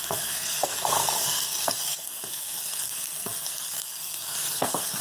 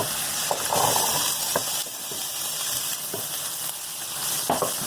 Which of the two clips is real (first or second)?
second